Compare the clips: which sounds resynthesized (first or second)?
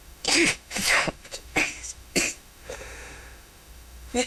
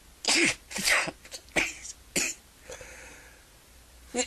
first